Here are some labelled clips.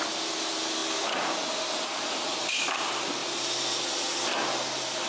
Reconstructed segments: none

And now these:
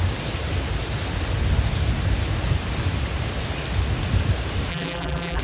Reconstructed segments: 4.7-5.4 (vocoder, BigVGAN v2)

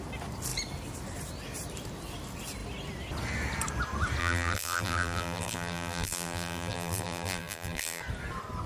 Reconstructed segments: 4.2-8.0 (vocoder, BigVGAN v2)

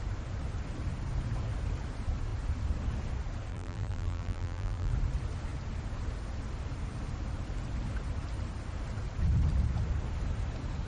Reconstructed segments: 3.5-4.9 (vocoder, BigVGAN v2)